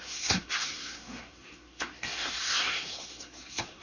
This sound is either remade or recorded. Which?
remade